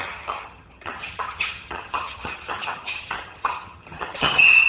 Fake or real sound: fake